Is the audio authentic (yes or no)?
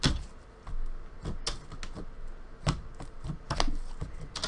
yes